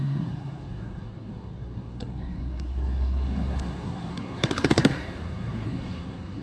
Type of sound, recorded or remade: remade